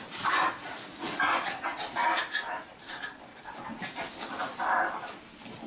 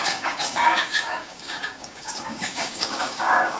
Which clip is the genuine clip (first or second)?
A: first